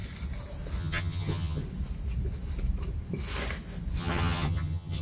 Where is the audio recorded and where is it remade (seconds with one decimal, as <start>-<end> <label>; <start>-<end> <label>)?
0.0-0.8 recorded; 0.8-1.6 remade; 1.6-4.0 recorded; 4.0-5.0 remade